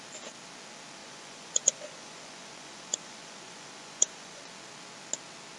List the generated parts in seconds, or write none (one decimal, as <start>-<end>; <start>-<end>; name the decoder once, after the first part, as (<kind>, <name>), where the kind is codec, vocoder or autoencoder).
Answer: 1.0-4.4 (vocoder, Vocos)

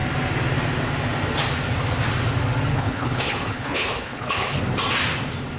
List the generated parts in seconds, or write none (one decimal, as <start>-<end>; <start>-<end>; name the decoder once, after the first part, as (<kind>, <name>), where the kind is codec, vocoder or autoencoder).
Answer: 2.7-4.6 (codec, HILCodec)

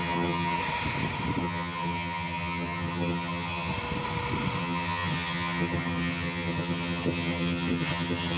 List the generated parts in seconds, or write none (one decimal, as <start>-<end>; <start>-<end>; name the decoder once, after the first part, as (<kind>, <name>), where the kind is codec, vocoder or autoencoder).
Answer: 0.0-0.6 (vocoder, HiFi-GAN); 1.4-3.7; 4.6-8.4

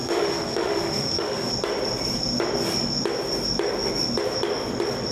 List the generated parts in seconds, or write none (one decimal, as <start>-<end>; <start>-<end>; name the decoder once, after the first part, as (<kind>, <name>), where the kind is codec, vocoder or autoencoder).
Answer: 0.0-1.5 (autoencoder, DAC-VAE)